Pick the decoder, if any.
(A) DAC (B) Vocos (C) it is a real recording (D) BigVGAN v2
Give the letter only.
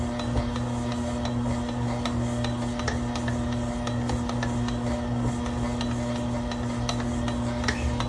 C